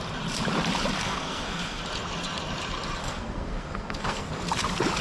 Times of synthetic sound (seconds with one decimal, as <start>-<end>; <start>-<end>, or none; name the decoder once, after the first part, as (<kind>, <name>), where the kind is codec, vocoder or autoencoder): 1.0-1.8 (codec, SNAC); 3.0-4.3